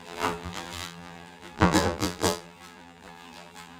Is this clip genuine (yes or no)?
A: no